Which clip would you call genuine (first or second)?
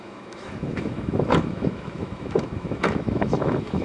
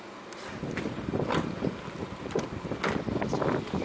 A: second